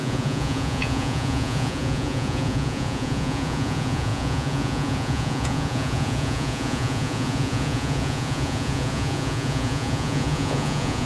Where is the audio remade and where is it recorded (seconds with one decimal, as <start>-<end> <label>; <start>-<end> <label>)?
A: 0.0-11.1 remade